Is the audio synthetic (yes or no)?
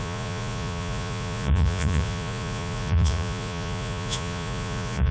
yes